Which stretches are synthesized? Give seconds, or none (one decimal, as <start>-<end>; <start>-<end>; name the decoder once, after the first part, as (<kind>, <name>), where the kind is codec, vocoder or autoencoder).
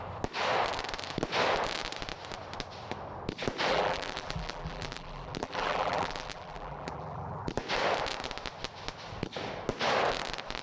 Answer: 3.7-7.5 (vocoder, BigVGAN v2)